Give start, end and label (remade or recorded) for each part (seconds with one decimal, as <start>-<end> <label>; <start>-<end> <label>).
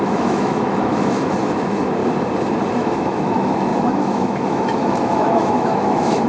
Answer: 0.0-2.0 remade; 2.0-2.7 recorded; 2.7-6.3 remade